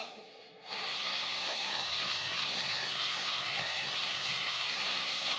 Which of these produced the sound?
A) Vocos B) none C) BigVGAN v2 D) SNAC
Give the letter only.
D